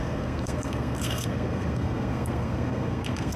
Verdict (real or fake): fake